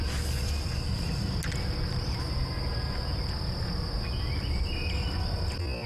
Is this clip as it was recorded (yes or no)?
yes